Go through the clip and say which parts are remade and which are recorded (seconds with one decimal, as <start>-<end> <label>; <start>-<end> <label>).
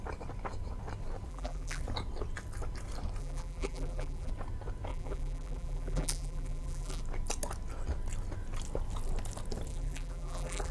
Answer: 0.0-1.3 recorded; 1.3-1.8 remade; 1.8-3.2 recorded; 3.2-4.3 remade; 4.3-4.9 recorded; 4.9-7.0 remade; 7.0-9.7 recorded; 9.7-10.7 remade